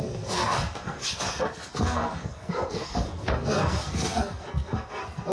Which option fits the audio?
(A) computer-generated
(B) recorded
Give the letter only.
A